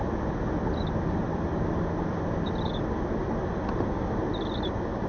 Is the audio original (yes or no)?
yes